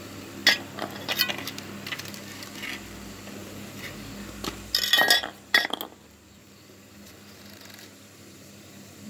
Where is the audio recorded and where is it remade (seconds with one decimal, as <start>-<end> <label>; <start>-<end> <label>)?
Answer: 0.0-3.4 recorded; 3.4-4.1 remade; 4.1-6.4 recorded; 6.4-9.1 remade